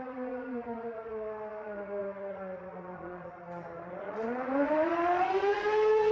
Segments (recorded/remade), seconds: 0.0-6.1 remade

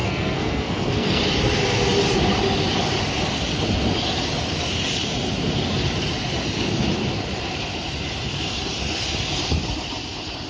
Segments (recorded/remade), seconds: 0.0-1.2 remade; 1.2-10.5 recorded

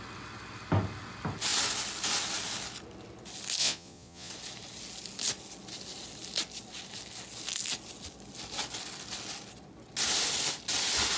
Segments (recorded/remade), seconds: 0.0-3.6 recorded; 3.6-4.3 remade; 4.3-11.2 recorded

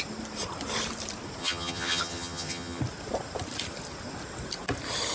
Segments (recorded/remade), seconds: 0.0-1.4 recorded; 1.4-2.8 remade; 2.8-5.1 recorded

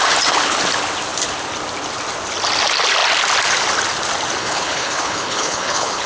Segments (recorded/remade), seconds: 0.0-4.4 recorded; 4.4-6.1 remade